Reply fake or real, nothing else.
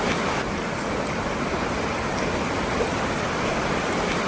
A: real